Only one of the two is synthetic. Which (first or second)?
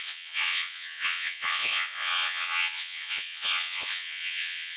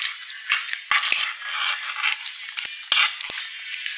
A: first